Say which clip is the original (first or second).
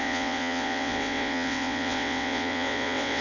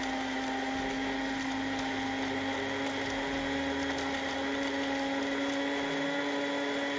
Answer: second